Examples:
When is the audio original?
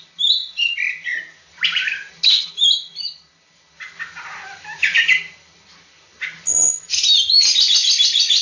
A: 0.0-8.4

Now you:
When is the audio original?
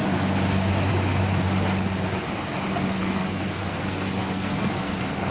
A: 0.0-3.0